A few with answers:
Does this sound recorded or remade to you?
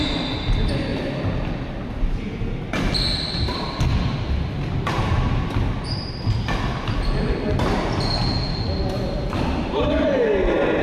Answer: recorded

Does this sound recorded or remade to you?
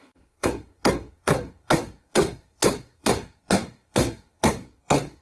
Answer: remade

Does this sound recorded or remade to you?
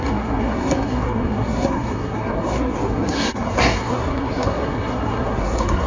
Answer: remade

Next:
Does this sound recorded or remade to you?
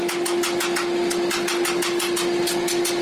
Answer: recorded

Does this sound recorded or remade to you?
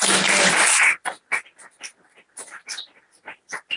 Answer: recorded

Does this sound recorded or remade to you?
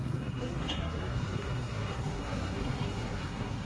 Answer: remade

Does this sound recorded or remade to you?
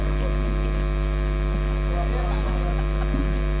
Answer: recorded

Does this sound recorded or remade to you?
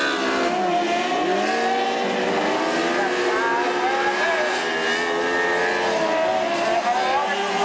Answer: recorded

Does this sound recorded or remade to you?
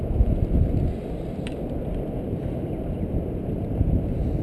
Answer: recorded